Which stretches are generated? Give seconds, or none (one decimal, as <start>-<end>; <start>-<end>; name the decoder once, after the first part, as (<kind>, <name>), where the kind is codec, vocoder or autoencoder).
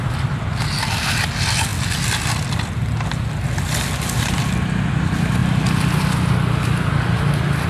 none